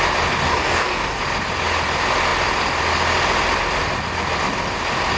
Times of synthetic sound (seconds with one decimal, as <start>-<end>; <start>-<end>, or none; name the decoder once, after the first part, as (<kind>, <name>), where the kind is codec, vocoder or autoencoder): 0.5-1.2 (codec, DAC)